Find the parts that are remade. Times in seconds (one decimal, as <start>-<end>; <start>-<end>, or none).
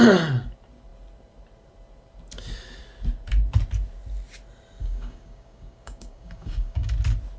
4.8-6.9